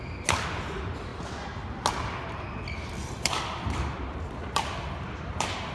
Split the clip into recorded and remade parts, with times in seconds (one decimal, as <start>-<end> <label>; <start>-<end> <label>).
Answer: 0.0-3.0 recorded; 3.0-5.7 remade

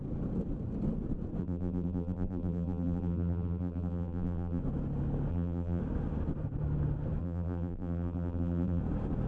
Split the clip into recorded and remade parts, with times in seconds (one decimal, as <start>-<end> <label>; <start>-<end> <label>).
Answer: 0.0-1.4 recorded; 1.4-4.6 remade; 4.6-5.3 recorded; 5.3-5.8 remade; 5.8-7.2 recorded; 7.2-8.8 remade; 8.8-9.3 recorded

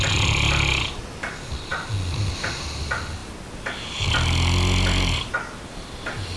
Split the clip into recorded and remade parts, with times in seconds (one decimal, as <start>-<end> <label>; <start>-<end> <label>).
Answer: 0.0-6.4 recorded

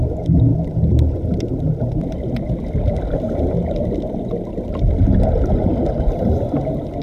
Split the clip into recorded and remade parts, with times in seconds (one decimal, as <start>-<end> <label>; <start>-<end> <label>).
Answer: 0.0-5.7 recorded; 5.7-6.2 remade; 6.2-7.0 recorded

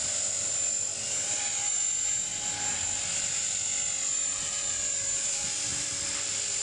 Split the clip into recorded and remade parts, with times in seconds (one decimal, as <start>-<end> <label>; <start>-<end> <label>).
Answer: 0.0-5.7 recorded; 5.7-6.6 remade

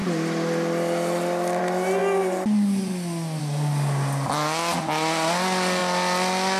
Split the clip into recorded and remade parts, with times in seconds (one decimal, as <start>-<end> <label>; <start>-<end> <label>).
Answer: 0.0-6.6 recorded

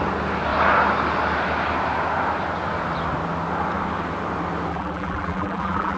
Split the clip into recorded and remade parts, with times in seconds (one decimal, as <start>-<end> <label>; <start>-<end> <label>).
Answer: 0.0-4.7 recorded; 4.7-6.0 remade

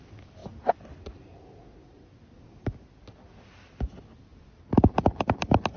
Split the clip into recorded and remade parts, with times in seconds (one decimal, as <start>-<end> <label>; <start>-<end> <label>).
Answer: 0.0-0.4 recorded; 0.4-1.0 remade; 1.0-5.8 recorded